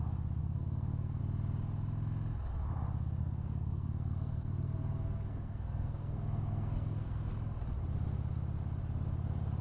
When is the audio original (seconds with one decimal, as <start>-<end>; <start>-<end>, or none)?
0.0-0.4; 1.2-3.2; 7.3-9.6